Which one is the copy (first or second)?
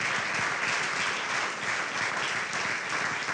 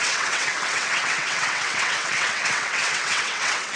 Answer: second